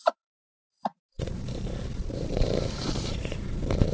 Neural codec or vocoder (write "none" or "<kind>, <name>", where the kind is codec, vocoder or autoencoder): vocoder, BigVGAN v2